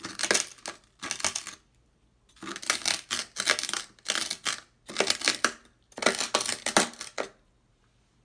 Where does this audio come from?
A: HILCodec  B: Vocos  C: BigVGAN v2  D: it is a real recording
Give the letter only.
D